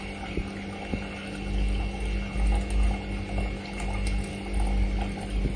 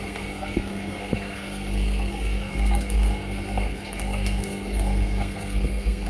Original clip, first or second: first